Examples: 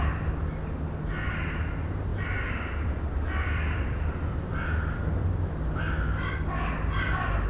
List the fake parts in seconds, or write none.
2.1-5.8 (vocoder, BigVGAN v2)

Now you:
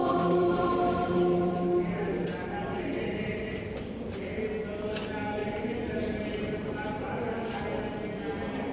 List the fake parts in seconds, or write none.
0.0-3.6 (vocoder, BigVGAN v2); 5.4-7.4